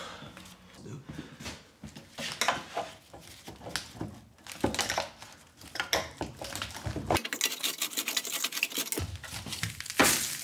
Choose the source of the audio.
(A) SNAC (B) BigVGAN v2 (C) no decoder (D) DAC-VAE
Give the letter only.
C